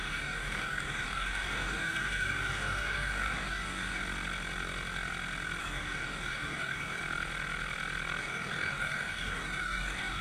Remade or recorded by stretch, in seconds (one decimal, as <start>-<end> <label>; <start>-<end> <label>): 0.0-4.0 remade; 4.0-5.6 recorded; 5.6-7.0 remade; 7.0-8.2 recorded; 8.2-10.2 remade